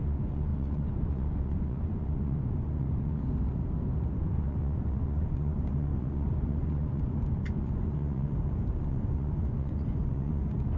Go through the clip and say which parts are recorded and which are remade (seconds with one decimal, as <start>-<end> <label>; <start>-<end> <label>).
0.0-3.2 remade; 3.2-4.2 recorded; 4.2-10.8 remade